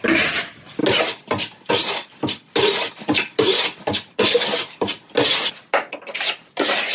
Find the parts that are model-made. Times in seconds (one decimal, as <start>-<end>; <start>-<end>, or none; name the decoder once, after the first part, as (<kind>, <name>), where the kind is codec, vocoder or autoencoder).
none